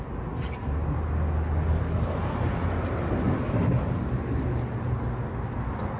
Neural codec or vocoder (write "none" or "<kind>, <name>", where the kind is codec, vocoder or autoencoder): none